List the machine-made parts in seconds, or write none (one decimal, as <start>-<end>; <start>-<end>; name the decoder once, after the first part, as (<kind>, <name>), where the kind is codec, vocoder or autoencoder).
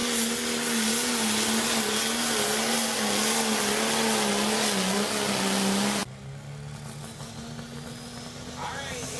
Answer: none